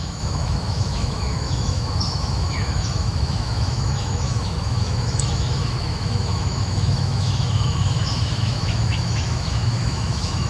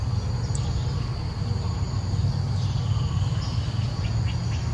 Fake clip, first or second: first